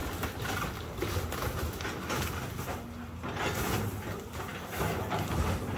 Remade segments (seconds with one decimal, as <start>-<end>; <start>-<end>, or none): none